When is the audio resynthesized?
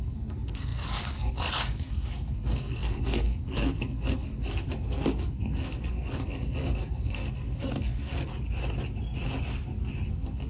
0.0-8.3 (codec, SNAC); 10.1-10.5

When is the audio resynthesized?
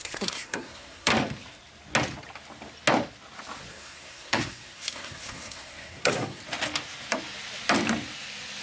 0.0-1.1 (codec, SNAC); 3.7-6.4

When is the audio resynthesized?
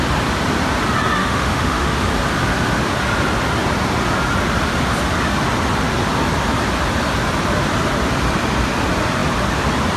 1.2-2.0 (autoencoder, DAC-VAE)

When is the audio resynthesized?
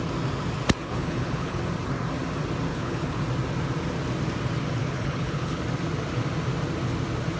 0.8-1.6 (codec, HILCodec); 2.7-3.2; 4.8-5.6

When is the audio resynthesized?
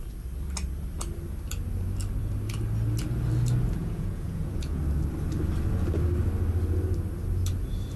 3.8-4.8 (vocoder, Vocos)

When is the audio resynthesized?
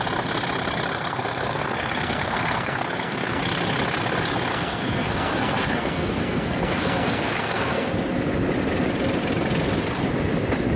0.9-3.4 (codec, SNAC); 4.5-7.9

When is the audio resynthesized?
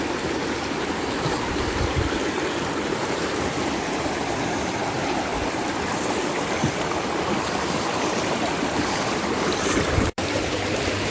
0.0-2.2 (vocoder, BigVGAN v2); 3.4-5.3; 8.2-11.1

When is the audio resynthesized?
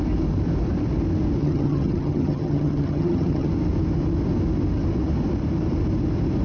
1.4-3.5 (vocoder, HiFi-GAN)